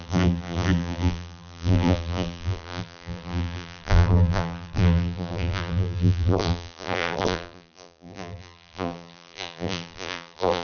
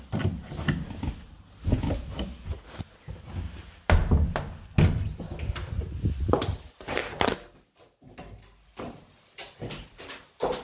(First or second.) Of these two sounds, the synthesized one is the first